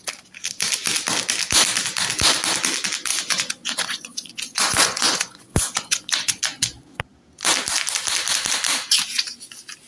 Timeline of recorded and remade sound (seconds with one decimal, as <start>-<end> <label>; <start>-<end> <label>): 0.0-3.1 recorded; 3.1-6.4 remade; 6.4-9.9 recorded